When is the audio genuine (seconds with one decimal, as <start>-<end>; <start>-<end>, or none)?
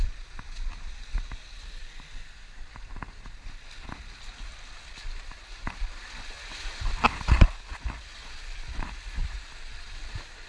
0.0-10.5